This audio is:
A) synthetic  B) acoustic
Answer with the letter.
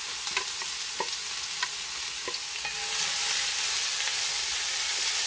B